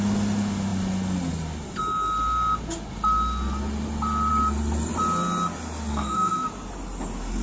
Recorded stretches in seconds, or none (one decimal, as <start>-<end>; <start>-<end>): 0.0-5.9; 6.5-7.4

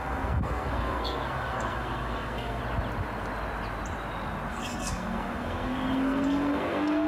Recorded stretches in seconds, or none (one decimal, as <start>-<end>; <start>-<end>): 2.6-4.5

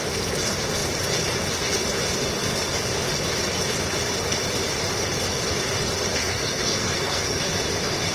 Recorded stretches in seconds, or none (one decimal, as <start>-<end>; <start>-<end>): 0.0-2.4; 2.9-6.2; 7.5-8.1

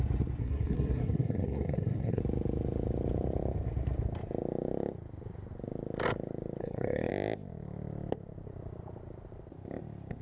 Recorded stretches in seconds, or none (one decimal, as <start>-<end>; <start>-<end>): 0.0-0.4; 2.2-6.6; 7.1-10.2